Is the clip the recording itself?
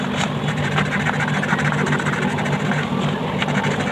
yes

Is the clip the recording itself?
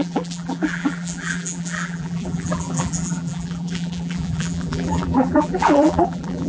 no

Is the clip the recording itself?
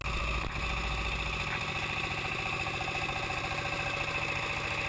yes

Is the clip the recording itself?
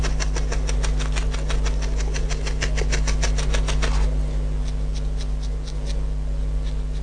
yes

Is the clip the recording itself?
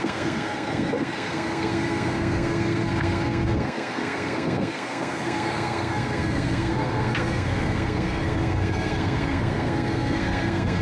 no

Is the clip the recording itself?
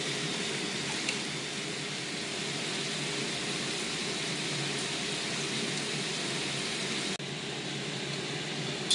yes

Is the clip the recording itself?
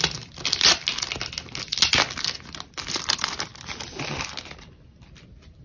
yes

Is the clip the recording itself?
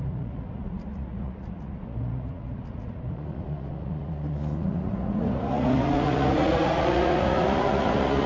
no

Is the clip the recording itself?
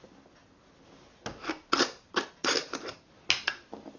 yes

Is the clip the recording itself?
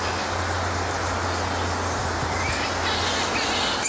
yes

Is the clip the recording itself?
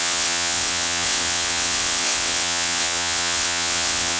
no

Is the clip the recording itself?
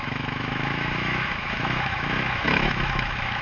no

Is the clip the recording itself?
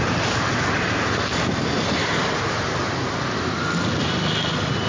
yes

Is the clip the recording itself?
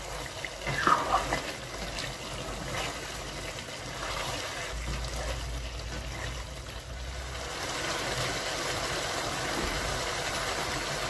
yes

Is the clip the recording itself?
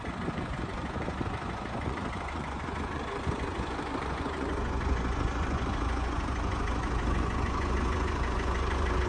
no